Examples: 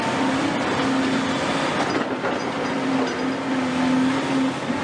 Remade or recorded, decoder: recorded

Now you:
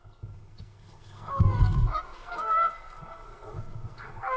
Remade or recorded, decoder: remade, codec, SNAC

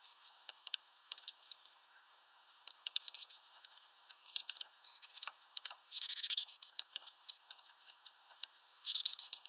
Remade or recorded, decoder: remade, codec, SNAC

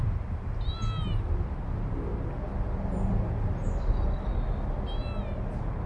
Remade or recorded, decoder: recorded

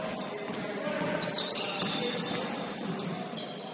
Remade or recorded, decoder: recorded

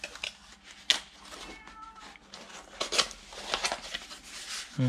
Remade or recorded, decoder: recorded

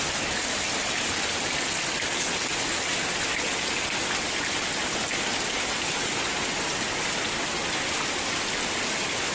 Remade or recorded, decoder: recorded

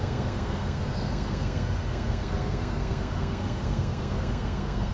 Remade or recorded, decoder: remade, codec, SNAC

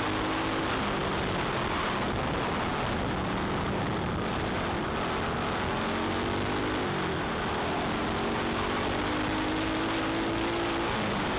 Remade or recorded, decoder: recorded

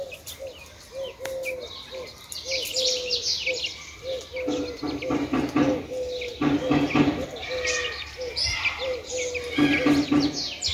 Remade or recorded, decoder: recorded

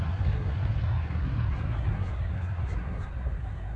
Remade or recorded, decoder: remade, codec, SNAC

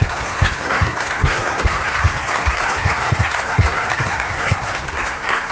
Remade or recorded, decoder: remade, codec, SNAC